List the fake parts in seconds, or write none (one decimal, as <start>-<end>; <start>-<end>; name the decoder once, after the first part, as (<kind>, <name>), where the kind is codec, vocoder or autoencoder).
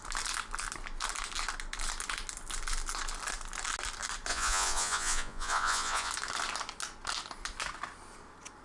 4.3-6.1 (vocoder, Vocos)